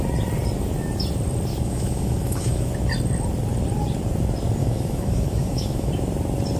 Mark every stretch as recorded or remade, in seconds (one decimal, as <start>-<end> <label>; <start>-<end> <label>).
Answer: 0.0-1.5 recorded; 1.5-2.7 remade; 2.7-4.6 recorded; 4.6-5.9 remade; 5.9-6.6 recorded